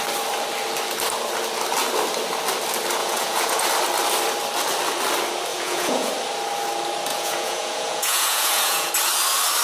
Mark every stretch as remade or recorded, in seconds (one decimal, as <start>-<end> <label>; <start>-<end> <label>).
0.0-3.0 recorded; 3.0-3.7 remade; 3.7-5.5 recorded; 5.5-6.1 remade; 6.1-7.1 recorded; 7.1-8.9 remade; 8.9-9.6 recorded